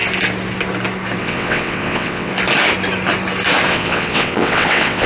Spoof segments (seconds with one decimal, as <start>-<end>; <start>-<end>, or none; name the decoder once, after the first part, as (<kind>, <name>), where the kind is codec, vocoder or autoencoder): 1.2-2.3 (vocoder, WaveNeXt); 3.7-5.1